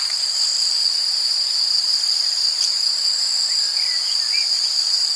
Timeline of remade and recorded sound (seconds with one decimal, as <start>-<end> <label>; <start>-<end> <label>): 0.0-5.2 recorded